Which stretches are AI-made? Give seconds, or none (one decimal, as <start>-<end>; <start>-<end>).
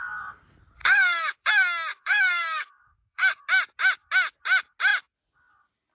0.8-1.5; 1.9-3.4